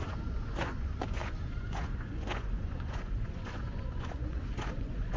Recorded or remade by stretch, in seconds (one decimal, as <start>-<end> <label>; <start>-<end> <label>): 0.0-5.2 remade